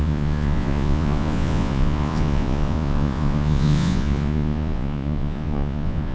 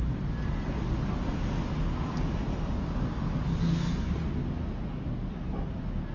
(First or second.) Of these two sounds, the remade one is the first